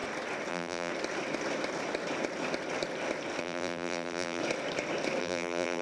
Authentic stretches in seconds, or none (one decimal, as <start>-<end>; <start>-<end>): 0.0-0.5; 0.9-3.4; 4.4-5.2